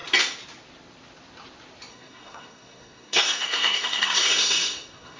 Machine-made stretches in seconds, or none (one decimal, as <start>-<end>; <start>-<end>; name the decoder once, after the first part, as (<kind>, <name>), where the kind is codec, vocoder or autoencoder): 1.9-5.2 (codec, SNAC)